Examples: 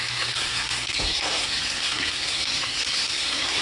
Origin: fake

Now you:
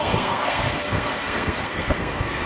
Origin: fake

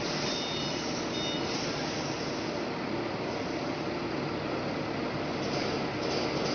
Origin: real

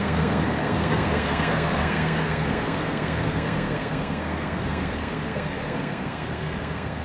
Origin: fake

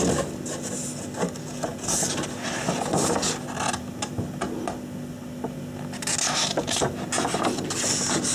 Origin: real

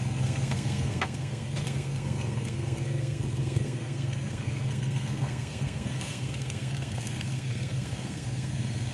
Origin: fake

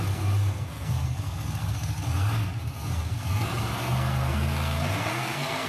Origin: fake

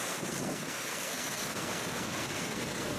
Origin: fake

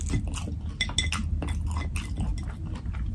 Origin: real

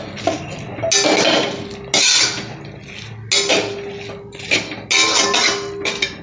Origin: real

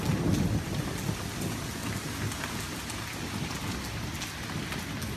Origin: real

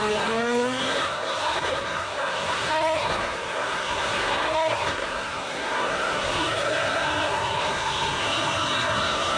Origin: fake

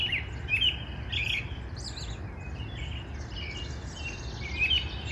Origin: real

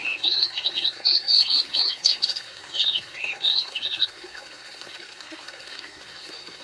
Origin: fake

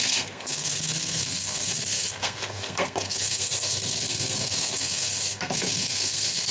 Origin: fake